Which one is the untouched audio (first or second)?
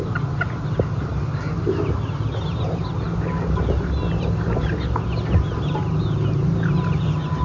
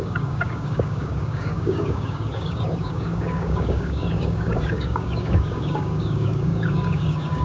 first